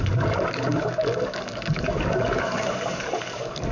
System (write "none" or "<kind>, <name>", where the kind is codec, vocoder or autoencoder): codec, DAC